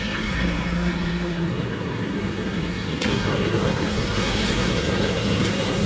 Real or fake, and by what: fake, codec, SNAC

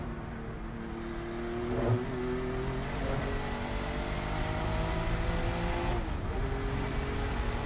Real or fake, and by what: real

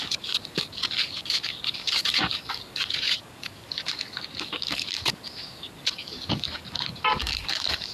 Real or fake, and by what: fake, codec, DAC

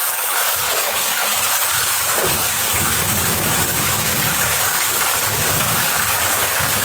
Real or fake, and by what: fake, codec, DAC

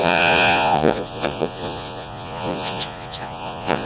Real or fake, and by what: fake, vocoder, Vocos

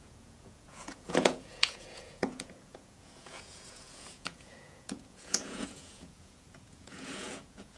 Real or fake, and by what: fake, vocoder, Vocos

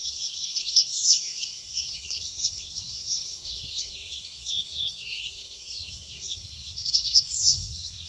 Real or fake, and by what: fake, codec, SNAC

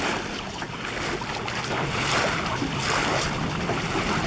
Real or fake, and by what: real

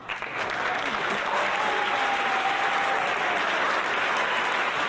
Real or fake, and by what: real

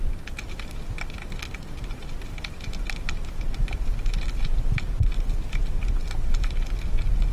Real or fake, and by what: real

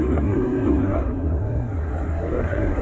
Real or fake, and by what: fake, codec, SNAC